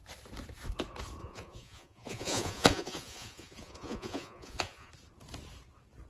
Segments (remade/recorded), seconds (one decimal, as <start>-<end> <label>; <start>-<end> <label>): 0.0-1.2 recorded; 1.2-4.9 remade; 4.9-6.1 recorded